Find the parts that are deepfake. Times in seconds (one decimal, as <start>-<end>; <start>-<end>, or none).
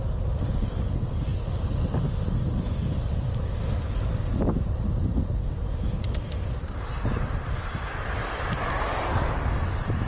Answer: none